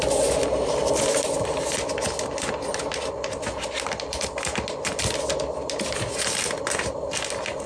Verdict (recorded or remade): recorded